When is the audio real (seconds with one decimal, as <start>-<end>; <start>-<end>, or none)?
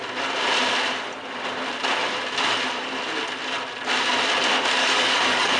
0.0-4.8